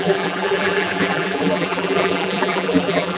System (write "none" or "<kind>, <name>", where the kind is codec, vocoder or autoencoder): vocoder, BigVGAN v2